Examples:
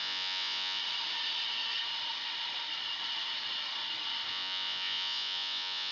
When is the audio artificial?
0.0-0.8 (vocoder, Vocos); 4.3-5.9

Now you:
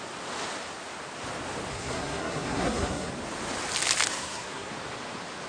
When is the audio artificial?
1.7-3.1 (codec, SNAC); 4.1-4.7

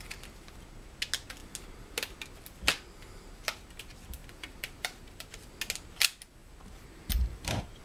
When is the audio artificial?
4.2-5.5 (vocoder, BigVGAN v2); 6.4-7.8

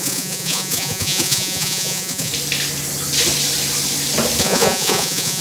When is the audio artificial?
0.0-2.3 (vocoder, Vocos); 4.4-5.4

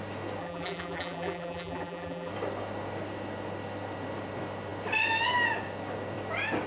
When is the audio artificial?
0.4-2.3 (vocoder, BigVGAN v2)

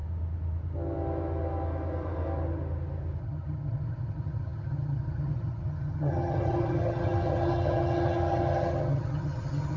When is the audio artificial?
3.2-9.8 (vocoder, HiFi-GAN)